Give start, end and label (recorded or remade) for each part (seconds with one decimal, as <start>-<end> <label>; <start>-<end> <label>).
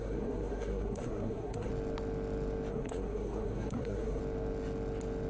0.0-1.7 remade; 1.7-2.7 recorded; 2.7-4.2 remade; 4.2-5.3 recorded